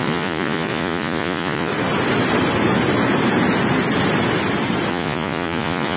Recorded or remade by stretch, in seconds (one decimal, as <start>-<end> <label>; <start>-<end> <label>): 0.0-1.7 remade; 1.7-4.9 recorded; 4.9-6.0 remade

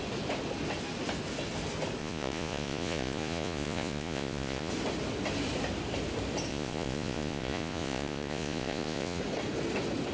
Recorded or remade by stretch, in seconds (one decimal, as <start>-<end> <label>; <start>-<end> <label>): 0.0-2.0 recorded; 2.0-4.7 remade; 4.7-6.5 recorded; 6.5-9.2 remade; 9.2-10.1 recorded

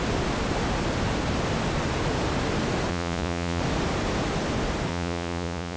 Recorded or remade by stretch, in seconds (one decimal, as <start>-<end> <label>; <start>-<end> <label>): 0.0-2.9 recorded; 2.9-3.6 remade; 3.6-4.9 recorded; 4.9-5.8 remade

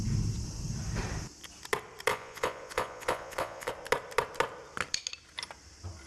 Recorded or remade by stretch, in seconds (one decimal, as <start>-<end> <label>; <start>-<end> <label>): 0.0-2.1 recorded; 2.1-3.7 remade; 3.7-6.1 recorded